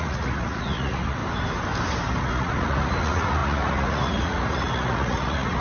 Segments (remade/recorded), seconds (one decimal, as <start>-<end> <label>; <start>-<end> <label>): 0.0-1.2 remade; 1.2-2.2 recorded; 2.2-5.6 remade